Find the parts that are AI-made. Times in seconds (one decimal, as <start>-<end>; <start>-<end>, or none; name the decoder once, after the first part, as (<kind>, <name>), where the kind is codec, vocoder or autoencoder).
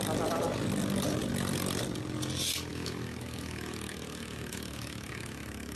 2.7-5.8 (autoencoder, DAC-VAE)